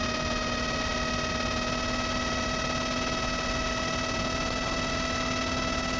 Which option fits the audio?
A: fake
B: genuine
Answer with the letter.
B